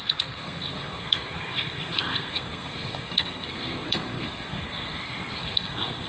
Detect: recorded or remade remade